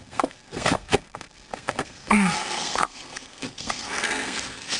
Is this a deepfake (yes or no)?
yes